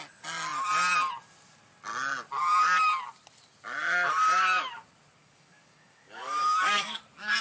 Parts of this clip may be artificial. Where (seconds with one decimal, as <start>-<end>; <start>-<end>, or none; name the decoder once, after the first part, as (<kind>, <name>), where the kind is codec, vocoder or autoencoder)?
5.2-7.0 (codec, DAC)